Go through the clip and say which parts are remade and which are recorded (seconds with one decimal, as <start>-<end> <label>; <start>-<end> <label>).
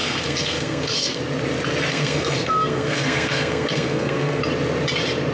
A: 0.0-1.2 remade; 1.2-1.9 recorded; 1.9-4.4 remade; 4.4-5.3 recorded